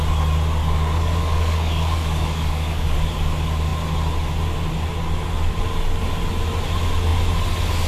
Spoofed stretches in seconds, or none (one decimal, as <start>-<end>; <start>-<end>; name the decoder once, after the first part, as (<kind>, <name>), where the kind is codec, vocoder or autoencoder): 0.6-3.0 (codec, DAC)